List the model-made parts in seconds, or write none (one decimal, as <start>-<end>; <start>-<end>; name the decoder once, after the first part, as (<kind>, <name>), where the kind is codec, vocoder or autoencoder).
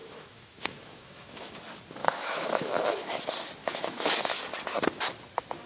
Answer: 0.0-1.5 (autoencoder, DAC-VAE); 2.0-3.2; 3.6-4.3